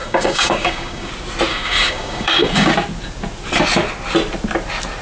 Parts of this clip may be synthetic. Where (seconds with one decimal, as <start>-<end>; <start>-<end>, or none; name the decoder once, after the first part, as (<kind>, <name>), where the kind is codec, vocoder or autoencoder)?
0.0-1.1 (codec, DAC); 1.5-2.7

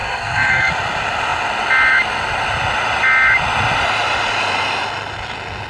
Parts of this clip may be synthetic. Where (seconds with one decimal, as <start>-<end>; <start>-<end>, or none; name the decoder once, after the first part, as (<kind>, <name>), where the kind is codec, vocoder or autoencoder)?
0.0-0.7 (codec, SNAC)

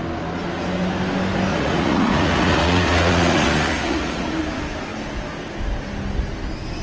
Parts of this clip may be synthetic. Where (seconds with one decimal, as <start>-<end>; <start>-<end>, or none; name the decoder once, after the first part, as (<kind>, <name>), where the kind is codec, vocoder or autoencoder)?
1.5-4.4 (vocoder, Vocos)

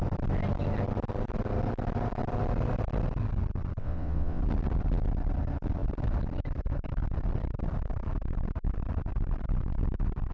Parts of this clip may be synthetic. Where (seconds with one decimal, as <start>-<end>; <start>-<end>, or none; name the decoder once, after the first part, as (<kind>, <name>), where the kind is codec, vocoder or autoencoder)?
3.8-4.4 (vocoder, WaveNeXt)

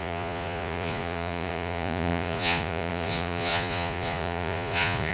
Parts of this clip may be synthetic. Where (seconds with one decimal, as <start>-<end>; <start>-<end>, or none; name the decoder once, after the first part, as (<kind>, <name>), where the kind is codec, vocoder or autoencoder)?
0.0-5.1 (vocoder, Vocos)